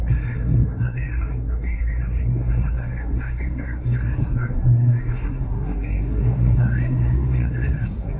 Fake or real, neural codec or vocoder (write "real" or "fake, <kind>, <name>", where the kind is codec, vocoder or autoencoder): fake, codec, SNAC